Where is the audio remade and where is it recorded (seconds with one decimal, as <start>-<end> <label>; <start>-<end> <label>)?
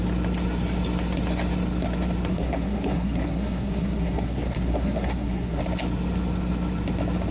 0.0-2.3 recorded; 2.3-5.6 remade; 5.6-7.3 recorded